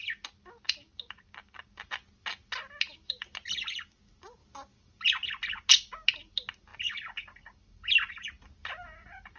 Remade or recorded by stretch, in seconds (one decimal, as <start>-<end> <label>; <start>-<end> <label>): 0.0-9.4 recorded